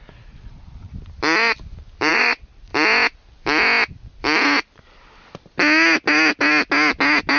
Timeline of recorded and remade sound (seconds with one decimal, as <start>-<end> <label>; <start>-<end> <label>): 0.0-0.9 remade; 0.9-2.1 recorded; 2.1-2.7 remade; 2.7-7.4 recorded